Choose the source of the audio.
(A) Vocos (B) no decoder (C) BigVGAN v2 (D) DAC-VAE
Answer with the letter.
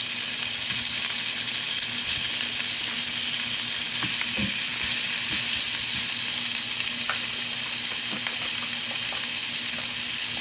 B